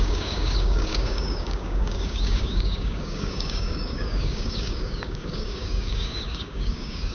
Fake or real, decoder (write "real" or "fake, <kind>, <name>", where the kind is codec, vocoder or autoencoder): fake, codec, DAC